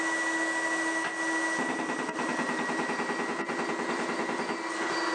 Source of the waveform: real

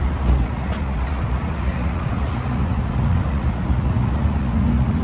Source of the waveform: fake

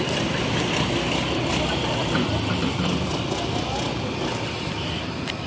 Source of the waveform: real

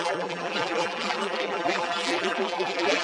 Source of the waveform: fake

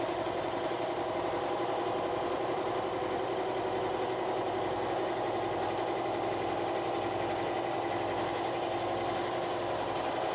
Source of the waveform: real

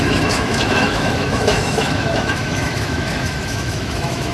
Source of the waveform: fake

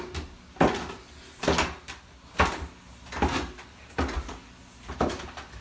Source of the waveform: real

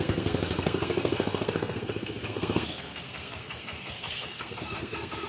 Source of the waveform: fake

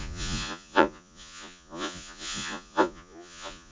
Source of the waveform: fake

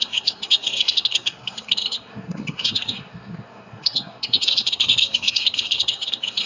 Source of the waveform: fake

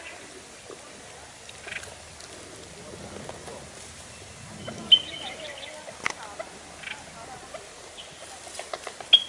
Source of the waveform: real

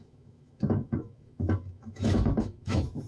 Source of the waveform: fake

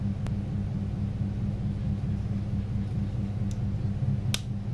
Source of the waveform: real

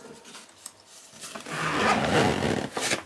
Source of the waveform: real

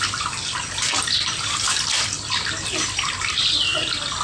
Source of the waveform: real